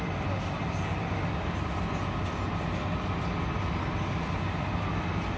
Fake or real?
real